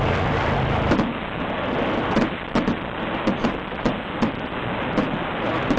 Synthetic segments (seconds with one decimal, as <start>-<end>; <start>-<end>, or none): none